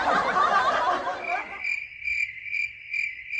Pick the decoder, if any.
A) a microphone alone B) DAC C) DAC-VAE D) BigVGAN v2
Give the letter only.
A